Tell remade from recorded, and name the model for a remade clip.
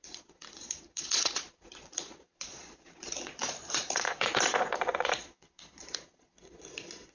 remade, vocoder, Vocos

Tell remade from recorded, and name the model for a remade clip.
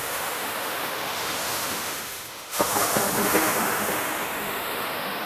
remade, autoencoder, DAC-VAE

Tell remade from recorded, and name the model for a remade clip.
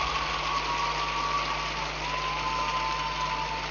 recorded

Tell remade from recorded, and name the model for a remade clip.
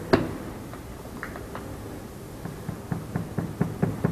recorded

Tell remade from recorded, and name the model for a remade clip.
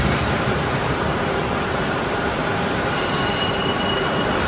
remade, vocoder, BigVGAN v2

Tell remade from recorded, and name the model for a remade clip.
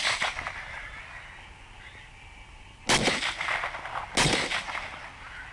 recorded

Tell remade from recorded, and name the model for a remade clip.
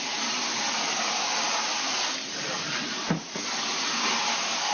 recorded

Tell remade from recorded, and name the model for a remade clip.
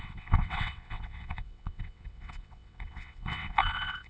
remade, vocoder, WaveNeXt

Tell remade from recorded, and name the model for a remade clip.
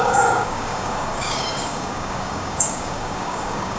remade, codec, DAC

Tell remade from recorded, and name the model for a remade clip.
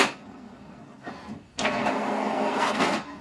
remade, codec, SNAC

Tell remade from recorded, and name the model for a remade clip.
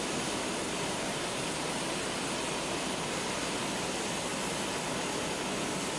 recorded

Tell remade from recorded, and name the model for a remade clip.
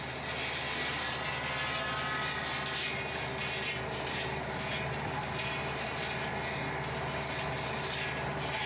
recorded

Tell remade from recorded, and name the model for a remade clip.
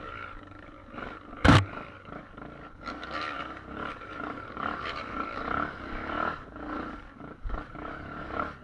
remade, codec, DAC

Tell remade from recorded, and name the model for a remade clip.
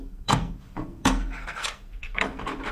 remade, codec, SNAC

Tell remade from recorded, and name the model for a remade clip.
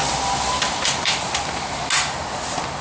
recorded